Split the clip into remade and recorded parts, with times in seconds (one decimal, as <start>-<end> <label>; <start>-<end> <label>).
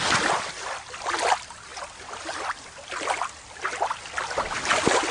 0.0-5.1 recorded